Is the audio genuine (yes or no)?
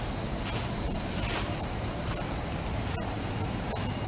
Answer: yes